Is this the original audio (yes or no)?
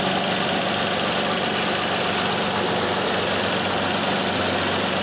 yes